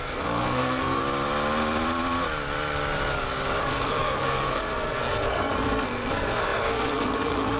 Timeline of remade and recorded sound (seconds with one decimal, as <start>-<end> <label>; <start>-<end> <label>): 0.0-1.0 remade; 1.0-3.6 recorded; 3.6-7.6 remade